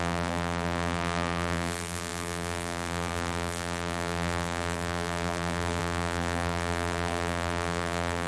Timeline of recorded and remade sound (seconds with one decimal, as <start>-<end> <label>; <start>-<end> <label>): 0.0-8.3 remade